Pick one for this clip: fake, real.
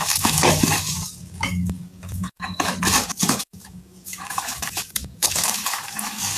fake